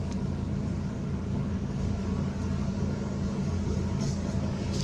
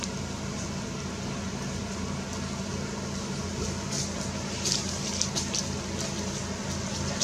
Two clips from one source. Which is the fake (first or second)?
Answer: first